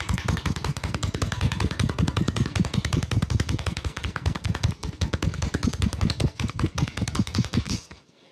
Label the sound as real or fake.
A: fake